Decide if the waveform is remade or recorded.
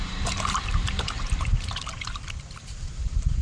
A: remade